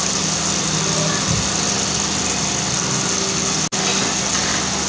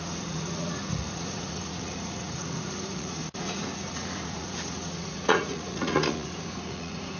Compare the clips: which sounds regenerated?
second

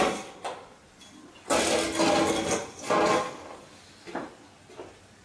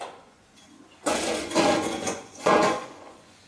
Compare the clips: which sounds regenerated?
second